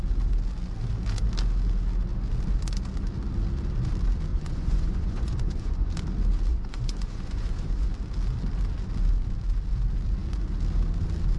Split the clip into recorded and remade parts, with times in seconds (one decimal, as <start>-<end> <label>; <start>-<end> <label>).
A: 0.0-4.3 recorded; 4.3-5.9 remade; 5.9-6.5 recorded; 6.5-7.9 remade; 7.9-11.4 recorded